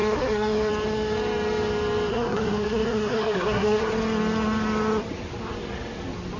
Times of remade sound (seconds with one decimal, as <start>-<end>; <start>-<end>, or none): 0.0-0.7; 2.1-3.9